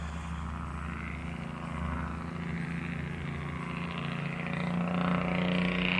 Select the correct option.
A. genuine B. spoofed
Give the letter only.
A